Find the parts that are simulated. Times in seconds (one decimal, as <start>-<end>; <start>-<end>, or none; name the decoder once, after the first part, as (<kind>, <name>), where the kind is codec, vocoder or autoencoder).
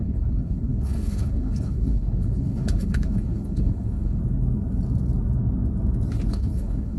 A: 0.0-4.2 (codec, HILCodec); 6.3-7.0